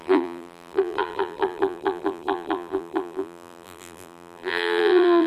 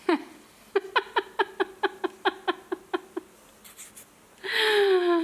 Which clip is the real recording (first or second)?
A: second